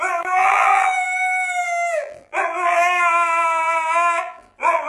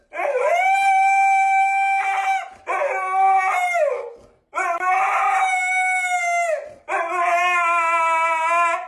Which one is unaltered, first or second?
second